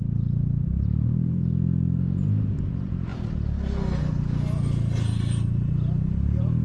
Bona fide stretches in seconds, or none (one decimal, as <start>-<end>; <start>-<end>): 3.1-4.0